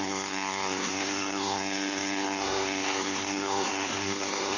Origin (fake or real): fake